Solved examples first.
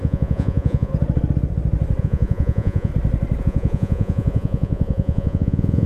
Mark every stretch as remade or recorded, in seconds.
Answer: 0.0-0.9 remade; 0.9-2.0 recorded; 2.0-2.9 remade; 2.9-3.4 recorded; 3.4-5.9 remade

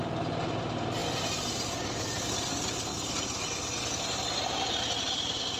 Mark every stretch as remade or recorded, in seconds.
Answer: 0.0-5.6 recorded